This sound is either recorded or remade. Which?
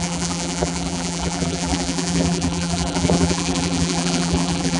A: remade